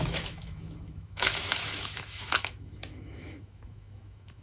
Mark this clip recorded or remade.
remade